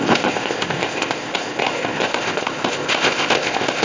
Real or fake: fake